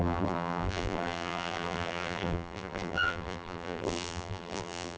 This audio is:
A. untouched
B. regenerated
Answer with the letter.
B